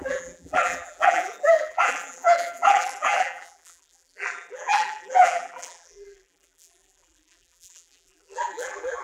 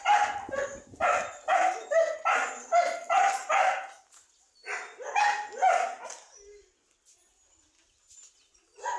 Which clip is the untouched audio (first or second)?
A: second